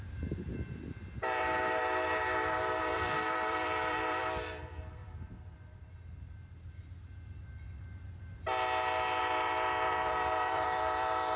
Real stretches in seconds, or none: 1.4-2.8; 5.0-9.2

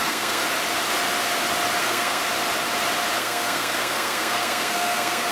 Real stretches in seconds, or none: 0.4-1.8; 2.2-3.2

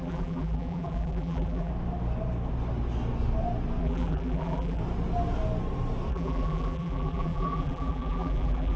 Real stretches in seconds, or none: 1.7-3.8; 4.8-6.1

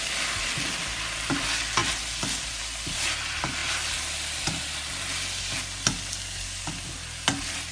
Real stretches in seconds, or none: 0.0-1.8; 2.6-7.7

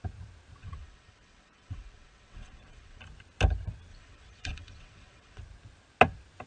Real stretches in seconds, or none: 0.0-0.6; 3.0-3.9; 5.4-6.5

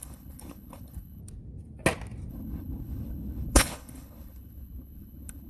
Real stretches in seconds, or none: 1.2-2.3